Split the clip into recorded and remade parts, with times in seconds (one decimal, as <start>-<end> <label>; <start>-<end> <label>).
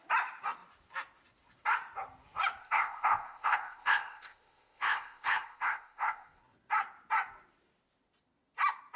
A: 0.0-2.6 recorded; 2.6-6.4 remade; 6.4-9.0 recorded